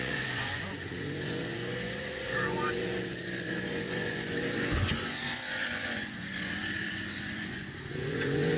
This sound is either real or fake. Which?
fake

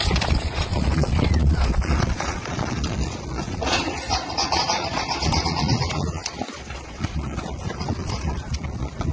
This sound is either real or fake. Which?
fake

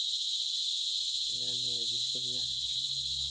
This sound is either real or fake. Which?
real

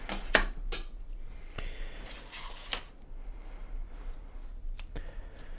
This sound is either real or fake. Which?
real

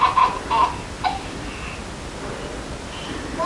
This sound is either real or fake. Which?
real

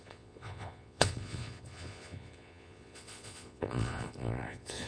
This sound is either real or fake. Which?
fake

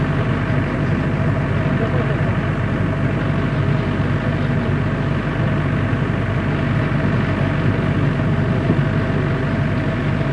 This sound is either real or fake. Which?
real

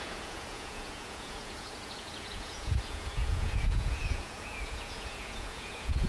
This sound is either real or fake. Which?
fake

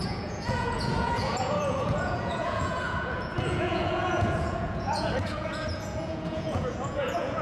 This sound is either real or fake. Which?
fake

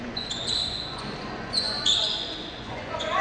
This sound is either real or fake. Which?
fake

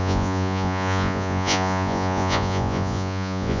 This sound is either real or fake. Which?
fake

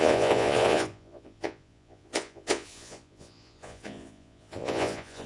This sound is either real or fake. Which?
fake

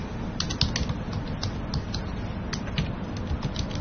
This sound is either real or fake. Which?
real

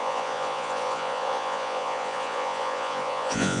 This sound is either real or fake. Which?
fake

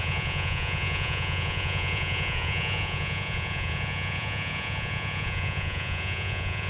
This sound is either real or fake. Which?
fake